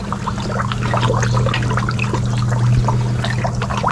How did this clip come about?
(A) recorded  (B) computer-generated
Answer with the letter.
A